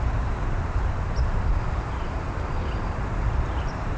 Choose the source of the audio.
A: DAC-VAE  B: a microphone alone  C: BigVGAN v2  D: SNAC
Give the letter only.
C